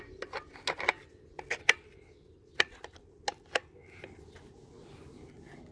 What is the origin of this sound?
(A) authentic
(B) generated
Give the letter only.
A